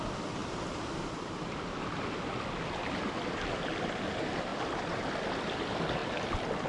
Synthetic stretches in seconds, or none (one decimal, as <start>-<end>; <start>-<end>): 0.4-3.1; 4.5-5.2; 6.0-6.7